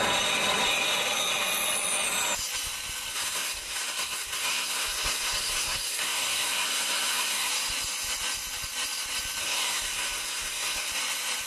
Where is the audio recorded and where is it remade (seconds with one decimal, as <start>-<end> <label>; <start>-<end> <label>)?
0.0-3.1 recorded; 3.1-7.5 remade; 7.5-9.4 recorded; 9.4-10.9 remade; 10.9-11.5 recorded